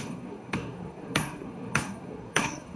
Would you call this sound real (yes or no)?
no